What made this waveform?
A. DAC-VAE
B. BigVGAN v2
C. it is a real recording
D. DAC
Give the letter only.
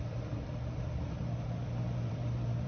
B